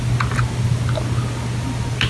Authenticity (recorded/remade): recorded